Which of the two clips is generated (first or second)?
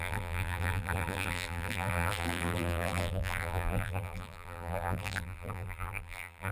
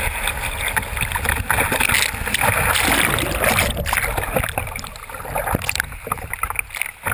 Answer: first